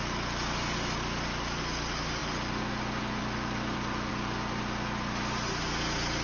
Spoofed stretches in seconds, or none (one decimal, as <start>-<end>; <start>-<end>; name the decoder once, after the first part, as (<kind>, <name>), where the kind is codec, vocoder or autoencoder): none